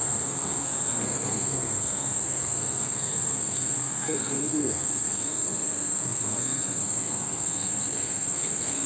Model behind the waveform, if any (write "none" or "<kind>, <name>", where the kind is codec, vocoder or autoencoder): codec, SNAC